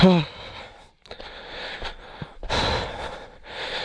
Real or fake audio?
real